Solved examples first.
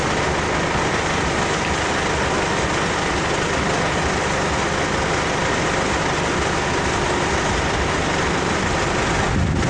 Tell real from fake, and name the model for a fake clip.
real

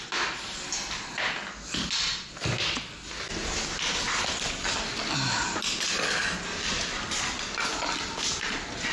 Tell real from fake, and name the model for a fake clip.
real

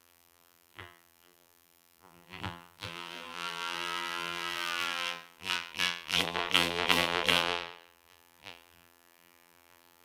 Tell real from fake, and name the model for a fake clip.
fake, vocoder, BigVGAN v2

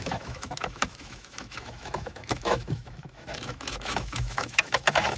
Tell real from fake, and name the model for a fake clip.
fake, autoencoder, DAC-VAE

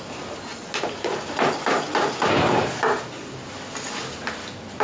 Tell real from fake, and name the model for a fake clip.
real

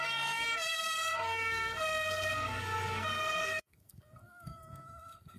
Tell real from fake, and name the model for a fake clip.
fake, codec, SNAC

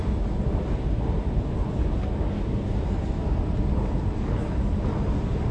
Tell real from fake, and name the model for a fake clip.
real